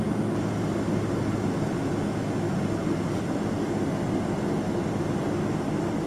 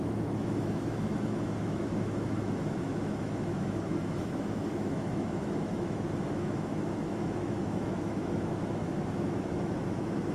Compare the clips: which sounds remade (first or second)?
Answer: second